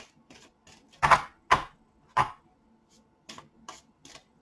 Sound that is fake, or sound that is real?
real